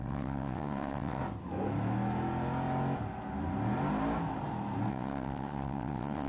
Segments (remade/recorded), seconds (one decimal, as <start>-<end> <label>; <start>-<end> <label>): 0.0-1.2 remade; 1.2-4.9 recorded; 4.9-6.3 remade